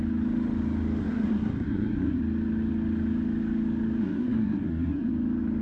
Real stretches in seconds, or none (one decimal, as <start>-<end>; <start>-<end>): 0.0-1.0; 2.2-4.0; 5.1-5.6